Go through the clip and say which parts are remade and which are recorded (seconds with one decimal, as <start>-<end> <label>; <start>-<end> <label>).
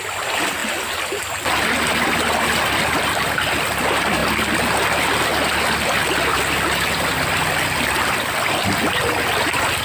0.0-9.8 recorded